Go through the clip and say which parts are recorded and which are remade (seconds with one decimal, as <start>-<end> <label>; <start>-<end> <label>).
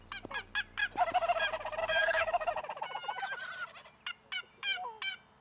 0.0-1.8 recorded; 1.8-2.5 remade; 2.5-5.4 recorded